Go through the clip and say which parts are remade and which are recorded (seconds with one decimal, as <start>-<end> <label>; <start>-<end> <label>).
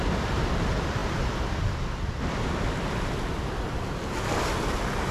0.0-5.1 recorded